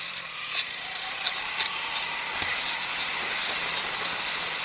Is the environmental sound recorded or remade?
recorded